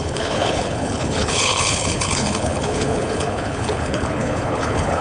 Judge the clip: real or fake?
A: fake